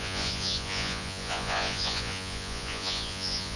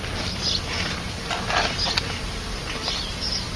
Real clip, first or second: second